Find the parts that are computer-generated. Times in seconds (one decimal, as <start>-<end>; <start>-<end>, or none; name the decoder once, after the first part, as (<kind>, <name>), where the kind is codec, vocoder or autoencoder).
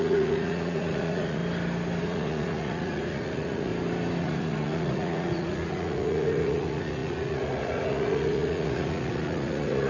0.0-1.4 (vocoder, Vocos); 2.0-3.7; 4.2-9.9